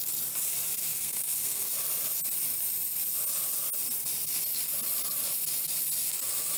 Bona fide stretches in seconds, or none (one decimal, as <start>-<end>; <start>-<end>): 0.0-0.8; 1.7-6.6